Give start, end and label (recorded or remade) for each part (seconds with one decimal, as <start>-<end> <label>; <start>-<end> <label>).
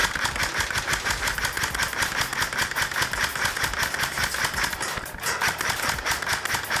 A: 0.0-6.8 recorded